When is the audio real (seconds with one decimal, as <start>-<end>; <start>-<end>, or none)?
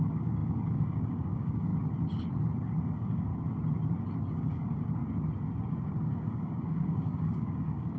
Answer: 1.7-2.9; 3.3-4.3; 5.0-5.9